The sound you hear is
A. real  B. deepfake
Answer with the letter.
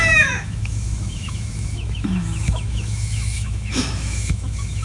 B